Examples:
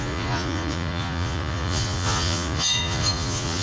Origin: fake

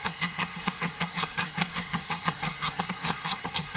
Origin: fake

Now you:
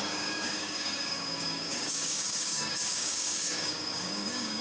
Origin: fake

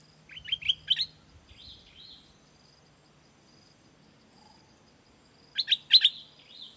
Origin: real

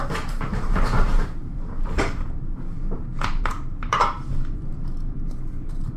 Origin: fake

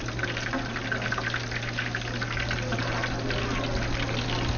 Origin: real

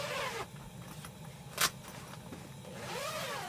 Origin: real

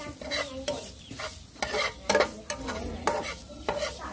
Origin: real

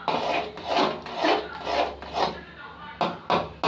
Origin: real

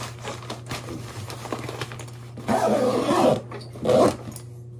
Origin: real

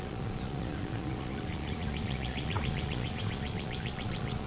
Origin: fake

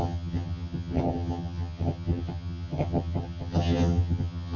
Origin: fake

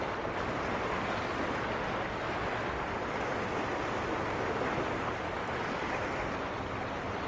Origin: real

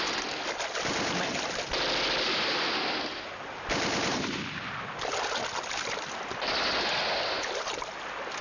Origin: real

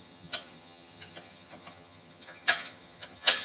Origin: fake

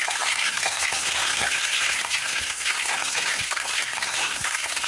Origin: fake